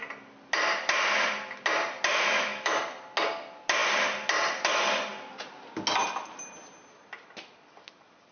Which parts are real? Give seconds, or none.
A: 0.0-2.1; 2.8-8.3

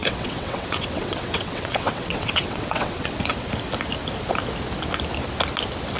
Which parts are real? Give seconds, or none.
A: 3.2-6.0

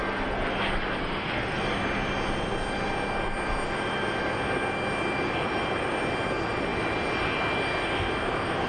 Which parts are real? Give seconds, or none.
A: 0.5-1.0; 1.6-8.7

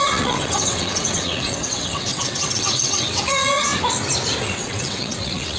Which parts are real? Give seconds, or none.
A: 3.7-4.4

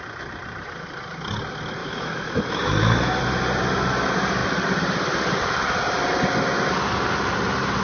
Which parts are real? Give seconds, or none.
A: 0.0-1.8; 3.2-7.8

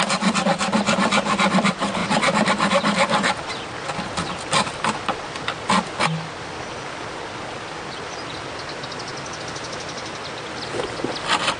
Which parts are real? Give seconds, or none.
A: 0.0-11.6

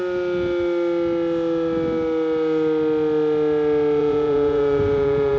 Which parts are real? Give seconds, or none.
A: 0.0-4.0